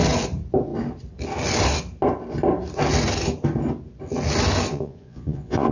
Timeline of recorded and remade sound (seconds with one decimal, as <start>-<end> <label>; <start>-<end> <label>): 0.0-4.7 recorded; 4.7-5.7 remade

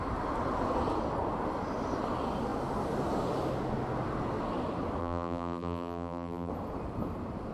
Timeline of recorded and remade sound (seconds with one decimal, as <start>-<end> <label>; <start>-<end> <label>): 0.0-5.0 recorded; 5.0-6.5 remade; 6.5-7.5 recorded

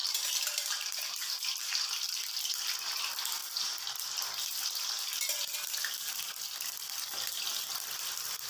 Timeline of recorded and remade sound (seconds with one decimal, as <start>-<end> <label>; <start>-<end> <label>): 0.0-1.4 remade; 1.4-8.5 recorded

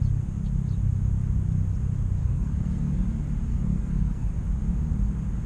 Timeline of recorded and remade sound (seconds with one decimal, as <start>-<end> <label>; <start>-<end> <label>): 0.0-2.2 recorded; 2.2-2.9 remade; 2.9-3.5 recorded; 3.5-4.3 remade; 4.3-5.5 recorded